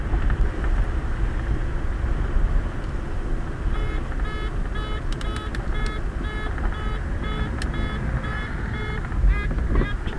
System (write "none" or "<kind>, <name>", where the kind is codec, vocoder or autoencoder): none